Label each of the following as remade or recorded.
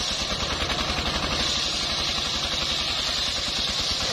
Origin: recorded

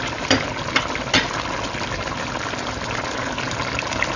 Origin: recorded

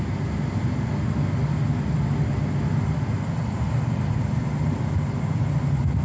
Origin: recorded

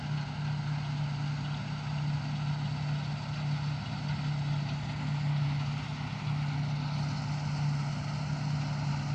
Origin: recorded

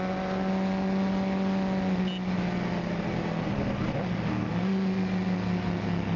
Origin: recorded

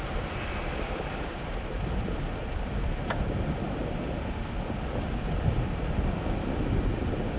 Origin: recorded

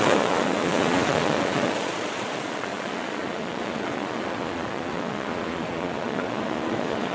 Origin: remade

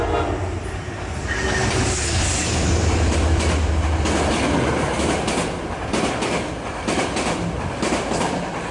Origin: recorded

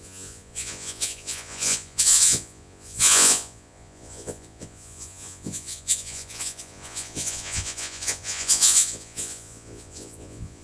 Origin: remade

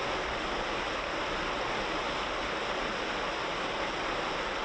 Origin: recorded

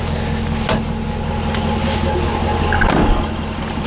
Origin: recorded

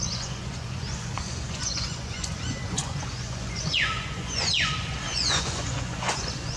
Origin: remade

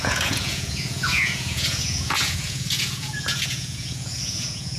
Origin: remade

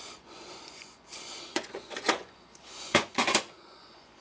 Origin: remade